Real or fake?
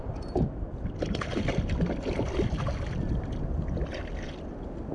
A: real